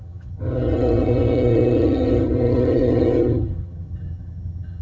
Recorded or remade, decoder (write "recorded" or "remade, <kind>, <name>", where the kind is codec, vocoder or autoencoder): remade, vocoder, HiFi-GAN